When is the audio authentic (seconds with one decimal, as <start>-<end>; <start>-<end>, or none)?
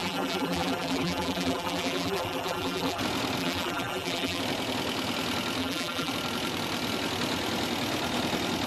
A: 3.0-3.4; 4.4-5.6; 6.1-8.7